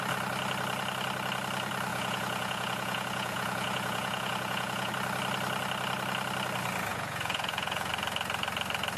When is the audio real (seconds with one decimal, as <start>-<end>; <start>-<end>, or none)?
0.0-1.9; 4.9-6.9; 7.9-9.0